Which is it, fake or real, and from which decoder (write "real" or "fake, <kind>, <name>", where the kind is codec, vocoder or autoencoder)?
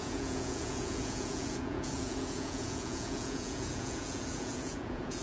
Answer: fake, vocoder, Vocos